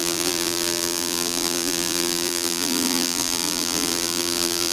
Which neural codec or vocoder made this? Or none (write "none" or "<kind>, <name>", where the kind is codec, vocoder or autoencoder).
vocoder, BigVGAN v2